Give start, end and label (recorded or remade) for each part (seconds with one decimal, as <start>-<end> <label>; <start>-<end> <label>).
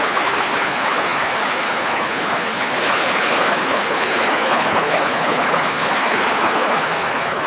0.0-7.5 remade